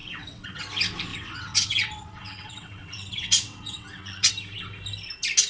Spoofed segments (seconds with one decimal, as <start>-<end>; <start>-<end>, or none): 0.0-0.6; 1.1-4.3